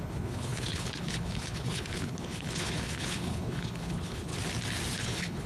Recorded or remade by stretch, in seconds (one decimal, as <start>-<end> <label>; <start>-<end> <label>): 0.0-4.3 remade; 4.3-5.0 recorded; 5.0-5.5 remade